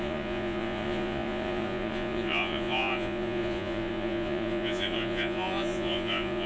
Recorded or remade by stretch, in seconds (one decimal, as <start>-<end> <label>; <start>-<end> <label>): 0.0-6.5 remade